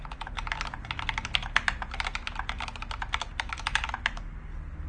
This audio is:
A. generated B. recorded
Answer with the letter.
B